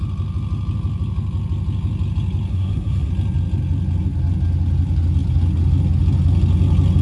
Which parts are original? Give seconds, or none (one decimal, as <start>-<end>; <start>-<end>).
0.0-2.5; 3.1-7.0